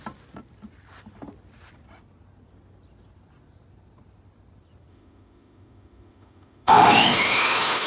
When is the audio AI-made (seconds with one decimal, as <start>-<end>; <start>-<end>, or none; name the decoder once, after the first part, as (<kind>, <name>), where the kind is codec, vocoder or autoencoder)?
4.9-7.9 (autoencoder, DAC-VAE)